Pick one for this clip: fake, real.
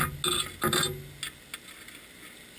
real